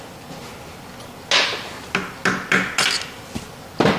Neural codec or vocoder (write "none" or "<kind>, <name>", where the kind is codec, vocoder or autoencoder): none